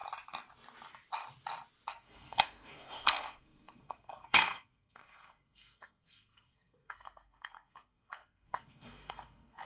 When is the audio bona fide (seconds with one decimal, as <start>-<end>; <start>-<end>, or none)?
0.0-1.9

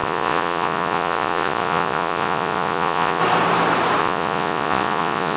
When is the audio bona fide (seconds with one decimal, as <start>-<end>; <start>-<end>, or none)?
3.2-4.0

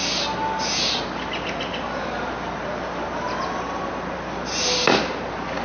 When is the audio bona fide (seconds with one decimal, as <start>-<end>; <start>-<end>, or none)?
0.0-5.6

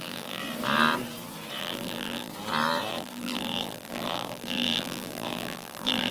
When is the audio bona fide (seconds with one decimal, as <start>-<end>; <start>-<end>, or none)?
0.4-1.6; 2.3-2.9

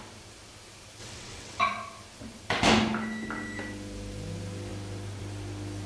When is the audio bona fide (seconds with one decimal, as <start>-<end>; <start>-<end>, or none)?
0.0-1.0; 1.6-5.9

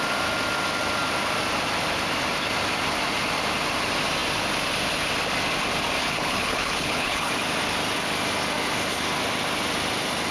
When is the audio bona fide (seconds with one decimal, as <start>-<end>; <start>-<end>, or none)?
0.0-6.0; 7.3-10.3

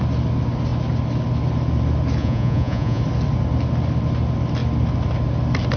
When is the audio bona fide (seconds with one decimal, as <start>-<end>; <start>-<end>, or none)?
0.0-2.2; 3.0-5.8